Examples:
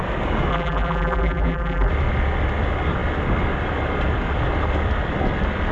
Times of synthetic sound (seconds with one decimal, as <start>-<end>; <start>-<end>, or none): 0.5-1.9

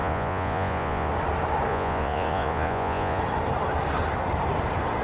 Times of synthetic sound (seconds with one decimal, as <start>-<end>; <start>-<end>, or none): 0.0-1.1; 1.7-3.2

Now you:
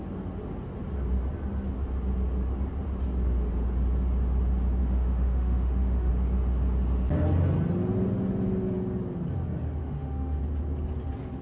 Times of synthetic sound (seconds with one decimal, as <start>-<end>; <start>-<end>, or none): 4.8-6.1; 9.8-10.4